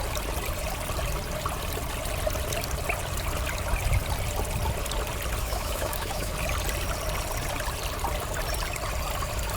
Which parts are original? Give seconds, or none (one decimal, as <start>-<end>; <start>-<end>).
0.0-5.4; 6.3-9.6